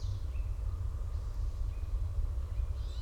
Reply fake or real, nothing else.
real